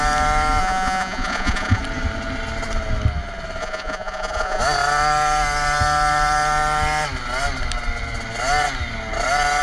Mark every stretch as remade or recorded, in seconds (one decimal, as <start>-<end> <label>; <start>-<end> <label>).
0.0-0.6 recorded; 0.6-1.8 remade; 1.8-3.6 recorded; 3.6-4.6 remade; 4.6-9.6 recorded